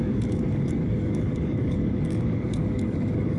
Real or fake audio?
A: fake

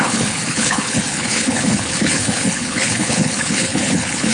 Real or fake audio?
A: fake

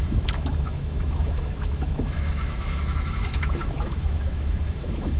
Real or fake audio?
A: fake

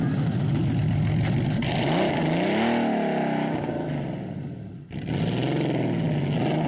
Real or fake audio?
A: real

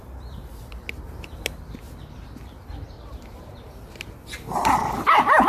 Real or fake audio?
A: real